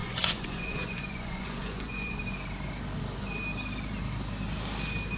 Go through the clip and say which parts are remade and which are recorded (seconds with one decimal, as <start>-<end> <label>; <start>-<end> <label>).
0.0-2.2 remade; 2.2-5.2 recorded